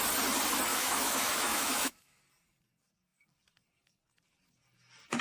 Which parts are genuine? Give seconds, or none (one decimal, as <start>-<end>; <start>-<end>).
0.0-0.7; 2.2-5.2